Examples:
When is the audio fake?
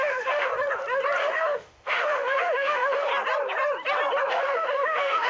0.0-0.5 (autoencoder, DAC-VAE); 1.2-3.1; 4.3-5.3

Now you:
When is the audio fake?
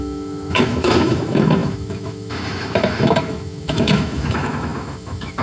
0.0-5.4 (autoencoder, DAC-VAE)